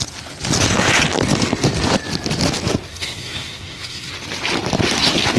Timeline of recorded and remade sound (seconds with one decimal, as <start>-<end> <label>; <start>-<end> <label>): 0.0-2.9 recorded; 2.9-4.1 remade; 4.1-5.4 recorded